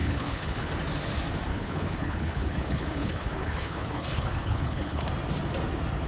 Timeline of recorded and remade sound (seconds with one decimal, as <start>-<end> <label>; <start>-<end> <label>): 0.0-0.7 remade; 0.7-1.5 recorded; 1.5-5.1 remade; 5.1-6.1 recorded